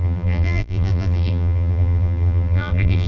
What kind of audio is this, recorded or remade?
remade